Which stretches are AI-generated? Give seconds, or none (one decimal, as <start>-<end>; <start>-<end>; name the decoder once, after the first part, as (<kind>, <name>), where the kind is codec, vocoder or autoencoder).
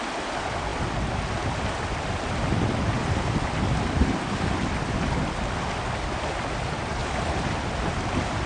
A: 3.0-5.3 (vocoder, BigVGAN v2); 7.0-7.6